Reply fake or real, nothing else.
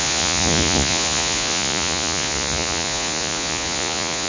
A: fake